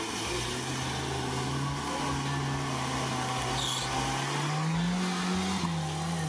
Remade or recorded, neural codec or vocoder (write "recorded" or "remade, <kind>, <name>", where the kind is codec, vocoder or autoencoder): recorded